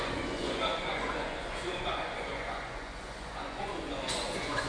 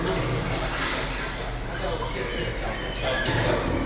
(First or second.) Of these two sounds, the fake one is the first